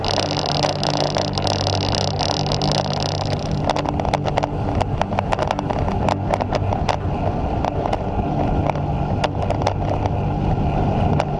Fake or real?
real